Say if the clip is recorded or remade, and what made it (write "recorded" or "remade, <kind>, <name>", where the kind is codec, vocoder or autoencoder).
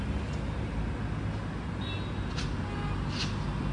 recorded